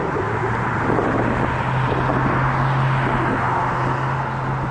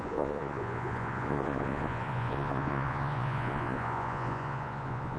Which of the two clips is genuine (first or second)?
first